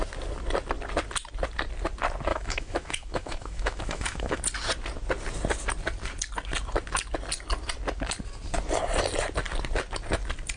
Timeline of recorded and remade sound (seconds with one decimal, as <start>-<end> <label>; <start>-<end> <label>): 0.0-2.3 recorded; 2.3-4.4 remade; 4.4-10.6 recorded